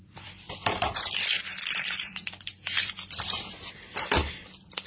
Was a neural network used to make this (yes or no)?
yes